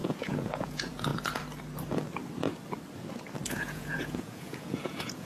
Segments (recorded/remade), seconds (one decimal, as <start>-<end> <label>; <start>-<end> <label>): 0.0-1.1 remade; 1.1-3.5 recorded; 3.5-5.3 remade